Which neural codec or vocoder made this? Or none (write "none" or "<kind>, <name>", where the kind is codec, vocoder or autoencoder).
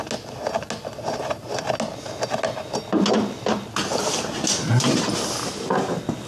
none